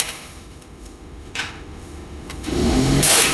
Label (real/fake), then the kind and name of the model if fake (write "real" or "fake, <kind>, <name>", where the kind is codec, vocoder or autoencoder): fake, autoencoder, DAC-VAE